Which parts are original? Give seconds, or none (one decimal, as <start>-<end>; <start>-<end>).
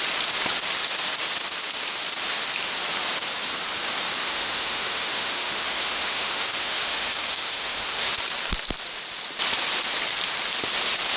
0.0-4.2; 8.1-11.2